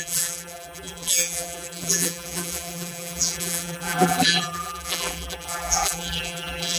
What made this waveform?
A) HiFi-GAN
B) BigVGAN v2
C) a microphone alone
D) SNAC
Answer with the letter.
B